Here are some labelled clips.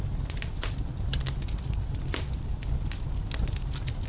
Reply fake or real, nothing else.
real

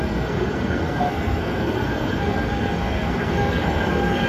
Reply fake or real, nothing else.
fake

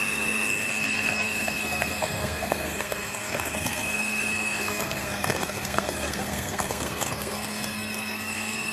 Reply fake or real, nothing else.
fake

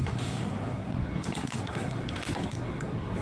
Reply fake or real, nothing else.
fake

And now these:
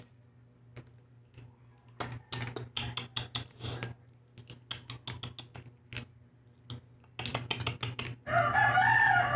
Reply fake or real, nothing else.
real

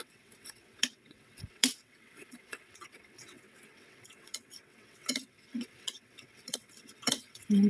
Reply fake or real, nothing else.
fake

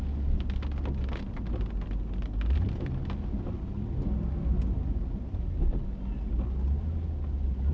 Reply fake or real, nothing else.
real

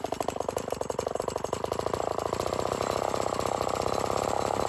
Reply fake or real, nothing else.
real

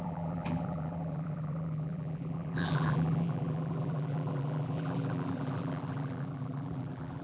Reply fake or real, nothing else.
fake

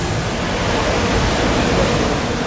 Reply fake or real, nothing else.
real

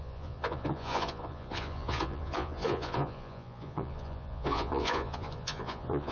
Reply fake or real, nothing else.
fake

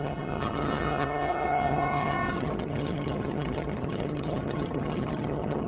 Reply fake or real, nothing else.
fake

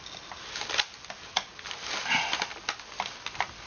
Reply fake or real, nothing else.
real